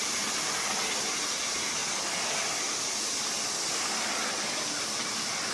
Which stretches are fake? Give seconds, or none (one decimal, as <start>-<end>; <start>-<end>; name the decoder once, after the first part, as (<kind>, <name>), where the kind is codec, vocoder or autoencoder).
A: none